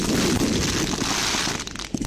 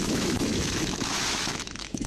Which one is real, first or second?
first